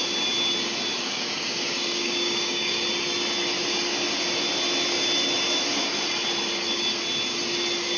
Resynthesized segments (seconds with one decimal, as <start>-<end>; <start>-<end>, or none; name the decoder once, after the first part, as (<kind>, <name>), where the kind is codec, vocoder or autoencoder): 1.0-2.7 (codec, DAC)